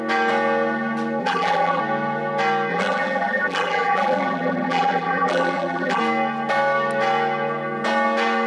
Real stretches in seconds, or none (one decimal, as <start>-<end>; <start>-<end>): 0.0-1.2; 1.8-2.7; 6.0-8.5